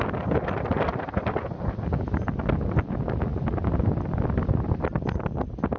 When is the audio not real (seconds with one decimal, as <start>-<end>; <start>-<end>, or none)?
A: none